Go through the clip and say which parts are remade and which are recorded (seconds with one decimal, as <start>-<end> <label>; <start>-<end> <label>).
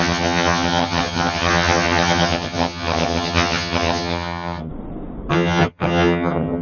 0.0-4.7 remade; 4.7-5.3 recorded; 5.3-6.6 remade